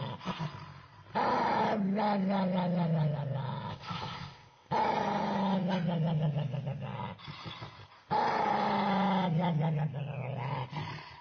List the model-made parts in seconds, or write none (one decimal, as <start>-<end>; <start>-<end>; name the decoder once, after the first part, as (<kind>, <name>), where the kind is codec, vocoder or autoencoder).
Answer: 3.7-4.7 (codec, ZipCodec)